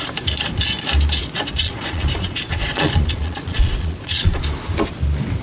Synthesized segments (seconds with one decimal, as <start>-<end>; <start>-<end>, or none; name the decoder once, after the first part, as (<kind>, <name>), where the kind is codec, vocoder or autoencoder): 1.2-4.4 (vocoder, Vocos)